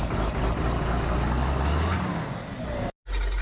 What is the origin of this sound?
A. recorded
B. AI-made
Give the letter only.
A